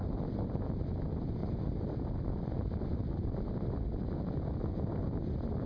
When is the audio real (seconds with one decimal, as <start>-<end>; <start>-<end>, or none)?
0.0-1.4; 3.7-5.7